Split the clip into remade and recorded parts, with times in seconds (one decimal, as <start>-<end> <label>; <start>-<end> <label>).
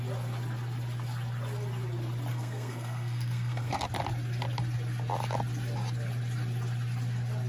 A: 0.0-2.3 recorded; 2.3-3.8 remade; 3.8-7.5 recorded